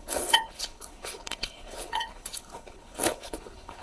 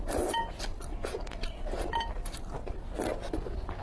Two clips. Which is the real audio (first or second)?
second